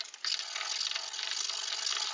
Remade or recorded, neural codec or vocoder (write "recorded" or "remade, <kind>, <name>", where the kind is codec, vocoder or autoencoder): recorded